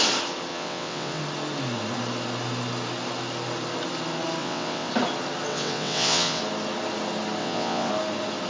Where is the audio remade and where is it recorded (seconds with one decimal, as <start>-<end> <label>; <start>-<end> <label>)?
0.0-0.5 recorded; 0.5-1.2 remade; 1.2-4.4 recorded; 4.4-4.9 remade; 4.9-5.5 recorded; 5.5-6.4 remade; 6.4-7.4 recorded; 7.4-7.9 remade; 7.9-8.5 recorded